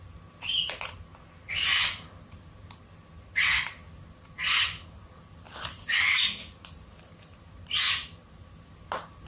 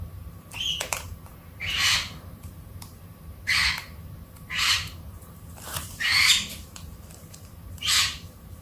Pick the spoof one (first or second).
second